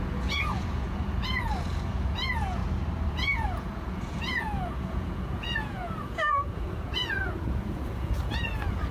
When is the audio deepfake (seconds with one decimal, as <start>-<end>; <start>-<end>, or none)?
0.0-2.6; 3.1-8.9